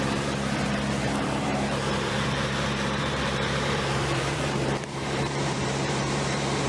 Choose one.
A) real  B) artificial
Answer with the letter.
B